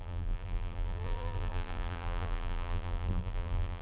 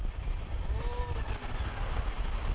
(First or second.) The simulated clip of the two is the first